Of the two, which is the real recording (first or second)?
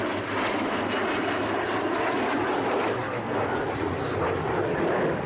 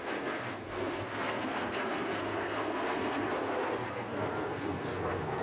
first